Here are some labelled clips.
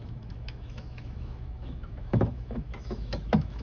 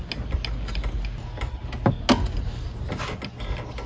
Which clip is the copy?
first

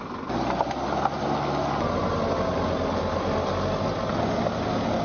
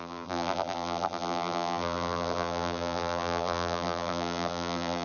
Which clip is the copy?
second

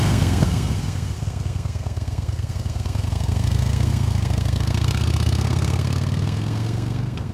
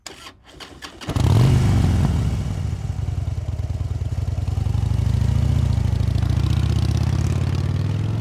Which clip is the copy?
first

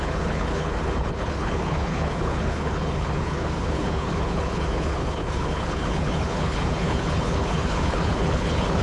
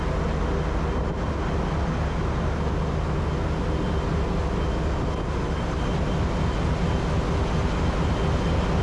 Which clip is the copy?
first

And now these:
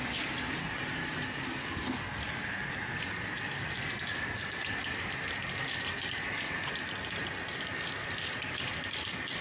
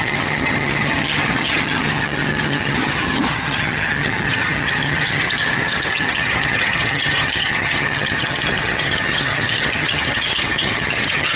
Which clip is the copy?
second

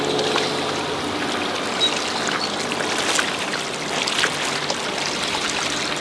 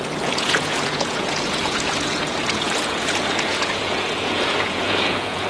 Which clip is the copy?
second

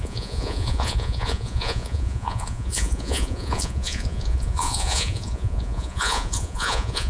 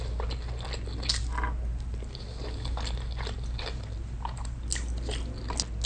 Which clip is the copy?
first